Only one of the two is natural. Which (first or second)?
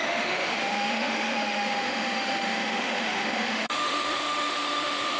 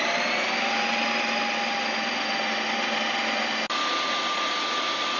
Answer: second